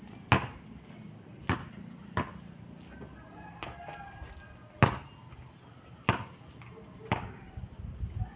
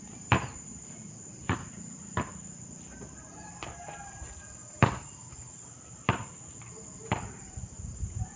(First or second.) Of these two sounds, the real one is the first